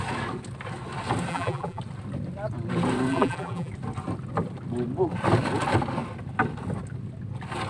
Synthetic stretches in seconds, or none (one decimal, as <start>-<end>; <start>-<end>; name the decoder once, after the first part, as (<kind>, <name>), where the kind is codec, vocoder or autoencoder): 1.3-1.8 (vocoder, BigVGAN v2); 3.1-3.7